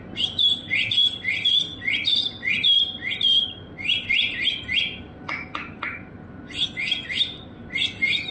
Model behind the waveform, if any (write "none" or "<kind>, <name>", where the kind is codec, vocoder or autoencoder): none